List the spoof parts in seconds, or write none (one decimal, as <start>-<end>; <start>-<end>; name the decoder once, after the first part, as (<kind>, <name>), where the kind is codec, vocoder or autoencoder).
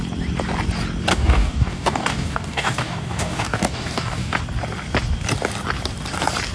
1.1-4.4 (codec, DAC)